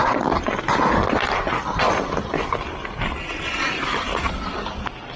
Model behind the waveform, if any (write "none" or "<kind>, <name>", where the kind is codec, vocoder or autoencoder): none